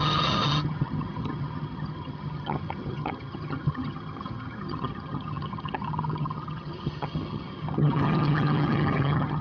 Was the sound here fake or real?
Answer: fake